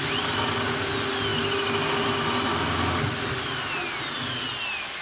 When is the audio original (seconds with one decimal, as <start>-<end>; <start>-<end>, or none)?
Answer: 0.0-5.0